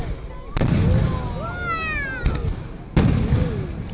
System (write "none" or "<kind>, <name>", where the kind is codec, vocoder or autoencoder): none